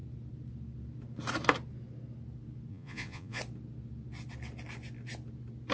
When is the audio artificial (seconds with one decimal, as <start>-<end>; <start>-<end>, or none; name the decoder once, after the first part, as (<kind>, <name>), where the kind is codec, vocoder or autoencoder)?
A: 2.7-3.4 (vocoder, Vocos)